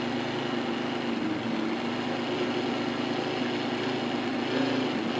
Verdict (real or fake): real